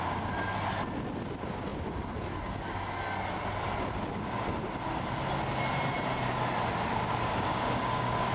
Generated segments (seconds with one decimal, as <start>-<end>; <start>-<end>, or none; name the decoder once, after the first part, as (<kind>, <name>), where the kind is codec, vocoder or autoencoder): 7.3-8.3 (codec, DAC)